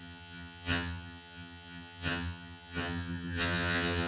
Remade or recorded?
remade